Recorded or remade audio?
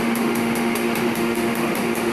remade